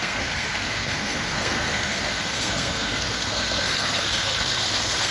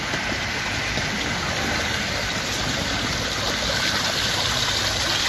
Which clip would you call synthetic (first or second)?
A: first